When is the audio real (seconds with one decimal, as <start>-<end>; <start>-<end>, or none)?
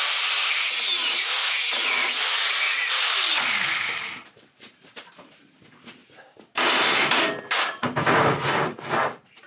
0.0-9.5